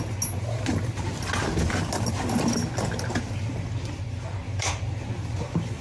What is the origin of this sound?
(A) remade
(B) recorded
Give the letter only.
B